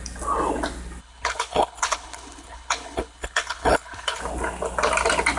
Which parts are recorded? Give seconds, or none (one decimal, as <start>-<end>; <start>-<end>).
0.0-1.0; 4.2-5.4